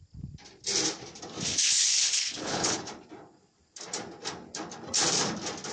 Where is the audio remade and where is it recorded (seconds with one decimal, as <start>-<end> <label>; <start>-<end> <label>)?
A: 0.0-1.5 recorded; 1.5-2.8 remade; 2.8-5.7 recorded